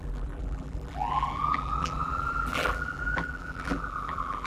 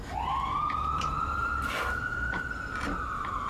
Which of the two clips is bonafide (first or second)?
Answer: second